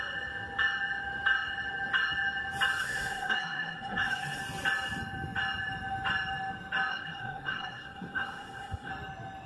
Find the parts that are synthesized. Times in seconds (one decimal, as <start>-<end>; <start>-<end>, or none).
2.8-4.4; 6.9-8.9